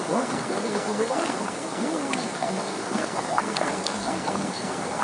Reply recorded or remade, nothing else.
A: remade